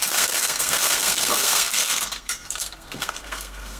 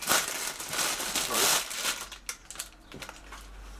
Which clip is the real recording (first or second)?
second